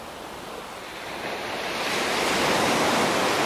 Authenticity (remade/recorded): recorded